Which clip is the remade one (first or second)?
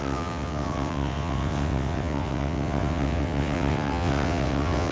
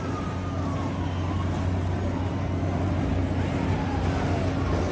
first